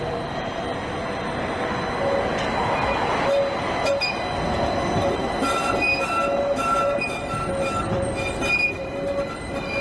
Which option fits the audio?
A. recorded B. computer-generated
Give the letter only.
A